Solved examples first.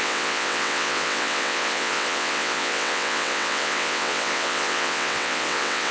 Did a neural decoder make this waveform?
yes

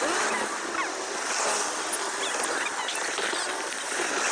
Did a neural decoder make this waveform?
no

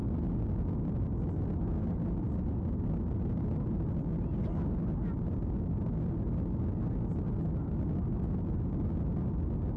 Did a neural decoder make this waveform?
no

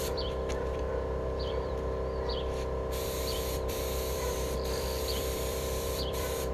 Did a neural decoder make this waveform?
yes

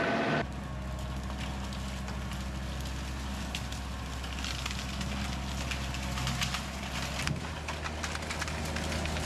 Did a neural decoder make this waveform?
no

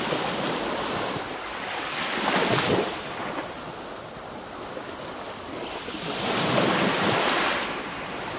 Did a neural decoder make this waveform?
no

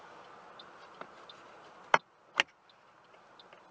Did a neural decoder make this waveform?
no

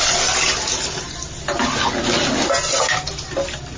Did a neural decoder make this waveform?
no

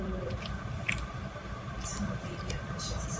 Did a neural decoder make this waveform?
yes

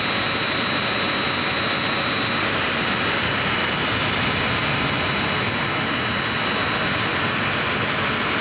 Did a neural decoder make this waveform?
no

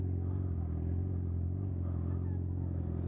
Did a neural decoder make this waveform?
no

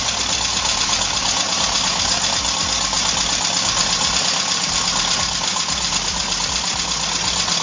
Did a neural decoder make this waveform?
no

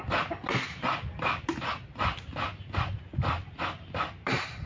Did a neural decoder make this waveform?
no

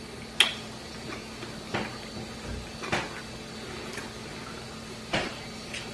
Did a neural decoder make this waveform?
no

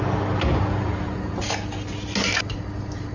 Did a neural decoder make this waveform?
no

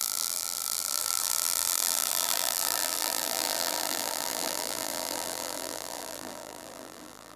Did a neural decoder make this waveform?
yes